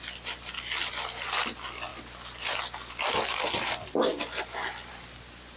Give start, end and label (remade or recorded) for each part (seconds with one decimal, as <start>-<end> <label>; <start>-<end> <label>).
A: 0.0-5.6 recorded